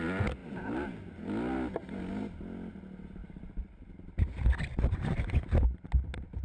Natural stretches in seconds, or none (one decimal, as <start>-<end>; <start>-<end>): 0.0-3.2; 3.9-6.4